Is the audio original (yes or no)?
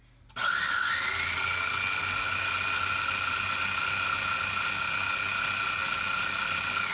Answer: yes